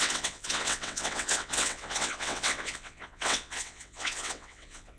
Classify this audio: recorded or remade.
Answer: remade